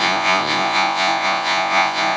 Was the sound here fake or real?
fake